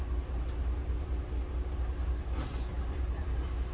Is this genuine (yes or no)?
yes